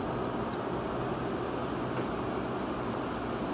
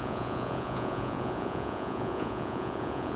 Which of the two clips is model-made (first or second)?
second